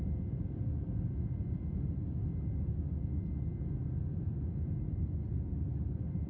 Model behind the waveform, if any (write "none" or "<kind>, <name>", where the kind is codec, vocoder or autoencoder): none